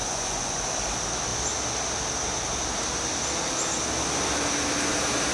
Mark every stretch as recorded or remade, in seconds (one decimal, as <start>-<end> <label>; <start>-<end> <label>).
0.0-0.6 remade; 0.6-5.3 recorded